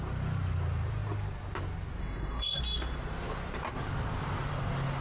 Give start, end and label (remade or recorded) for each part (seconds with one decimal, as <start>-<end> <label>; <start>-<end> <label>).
0.0-2.0 recorded; 2.0-2.6 remade; 2.6-5.0 recorded